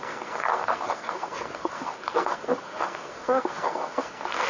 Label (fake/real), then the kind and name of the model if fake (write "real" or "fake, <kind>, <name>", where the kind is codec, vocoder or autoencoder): fake, codec, SNAC